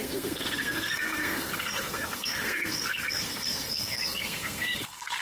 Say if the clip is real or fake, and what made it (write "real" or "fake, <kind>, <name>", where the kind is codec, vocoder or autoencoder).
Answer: fake, codec, SNAC